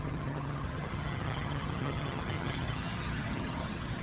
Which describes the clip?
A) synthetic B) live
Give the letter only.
A